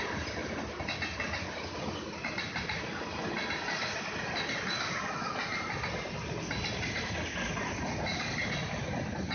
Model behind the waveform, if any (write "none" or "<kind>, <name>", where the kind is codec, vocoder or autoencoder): none